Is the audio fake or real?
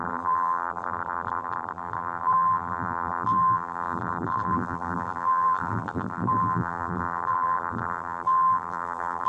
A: fake